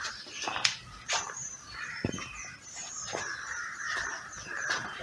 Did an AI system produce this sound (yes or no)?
yes